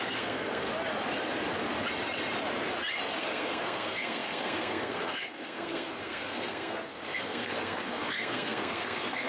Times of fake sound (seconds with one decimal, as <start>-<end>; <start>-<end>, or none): 0.0-0.7; 3.2-9.3